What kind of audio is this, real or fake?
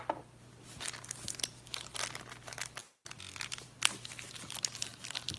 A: real